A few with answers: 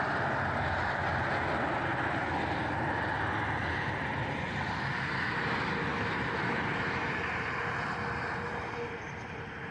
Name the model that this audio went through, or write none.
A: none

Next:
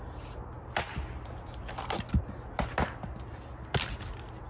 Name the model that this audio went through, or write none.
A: none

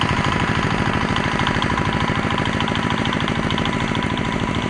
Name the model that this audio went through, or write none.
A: vocoder, BigVGAN v2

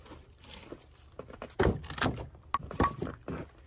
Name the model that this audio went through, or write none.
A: none